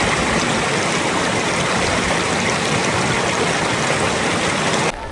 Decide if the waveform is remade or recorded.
recorded